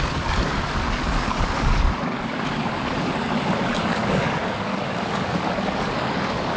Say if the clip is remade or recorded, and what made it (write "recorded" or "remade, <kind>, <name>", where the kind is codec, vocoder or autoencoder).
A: remade, codec, DAC